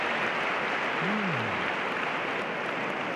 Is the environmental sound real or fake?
real